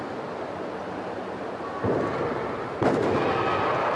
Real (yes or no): yes